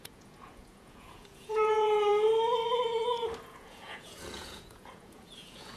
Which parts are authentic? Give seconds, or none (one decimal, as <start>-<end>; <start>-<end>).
2.1-3.4